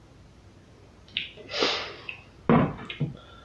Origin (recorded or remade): recorded